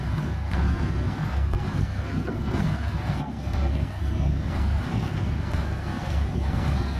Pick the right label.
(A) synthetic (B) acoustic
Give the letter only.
A